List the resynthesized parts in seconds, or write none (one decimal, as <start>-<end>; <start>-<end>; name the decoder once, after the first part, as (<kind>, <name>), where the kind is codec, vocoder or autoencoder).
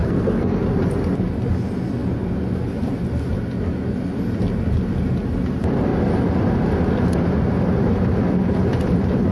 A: 0.0-0.6 (codec, SNAC)